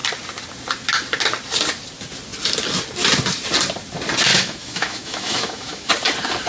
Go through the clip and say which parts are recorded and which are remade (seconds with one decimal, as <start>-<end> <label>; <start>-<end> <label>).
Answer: 0.0-4.3 recorded; 4.3-5.9 remade; 5.9-6.5 recorded